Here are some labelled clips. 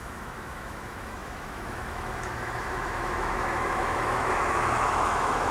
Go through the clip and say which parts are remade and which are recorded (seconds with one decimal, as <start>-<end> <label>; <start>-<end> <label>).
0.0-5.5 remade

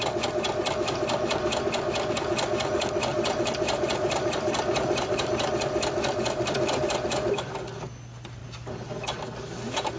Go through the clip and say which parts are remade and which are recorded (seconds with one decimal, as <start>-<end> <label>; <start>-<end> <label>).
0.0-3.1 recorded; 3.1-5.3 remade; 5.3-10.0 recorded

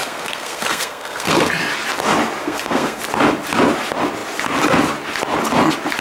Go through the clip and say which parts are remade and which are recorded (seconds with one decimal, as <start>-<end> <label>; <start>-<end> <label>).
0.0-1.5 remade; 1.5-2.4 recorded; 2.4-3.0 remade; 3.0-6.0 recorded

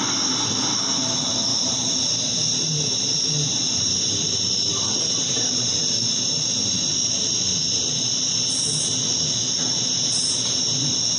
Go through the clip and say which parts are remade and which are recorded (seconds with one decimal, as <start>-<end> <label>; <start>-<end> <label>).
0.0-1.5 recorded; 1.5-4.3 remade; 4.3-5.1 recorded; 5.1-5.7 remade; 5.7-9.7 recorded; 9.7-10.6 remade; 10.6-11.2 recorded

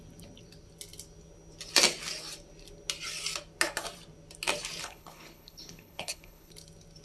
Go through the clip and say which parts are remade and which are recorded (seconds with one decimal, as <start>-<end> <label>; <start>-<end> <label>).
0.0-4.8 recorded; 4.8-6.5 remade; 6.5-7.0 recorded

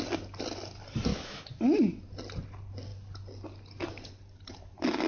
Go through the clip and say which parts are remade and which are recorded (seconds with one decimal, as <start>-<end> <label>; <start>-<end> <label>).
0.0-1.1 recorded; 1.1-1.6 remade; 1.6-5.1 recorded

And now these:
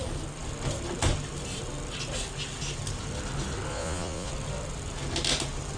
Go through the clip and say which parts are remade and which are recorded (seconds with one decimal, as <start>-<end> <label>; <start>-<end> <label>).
0.0-3.7 recorded; 3.7-4.3 remade; 4.3-5.8 recorded